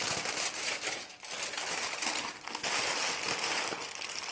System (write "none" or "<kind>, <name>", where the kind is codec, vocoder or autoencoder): none